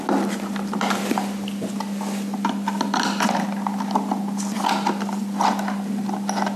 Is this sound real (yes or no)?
yes